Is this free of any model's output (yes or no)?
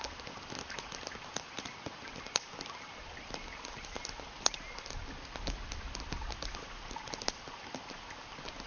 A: yes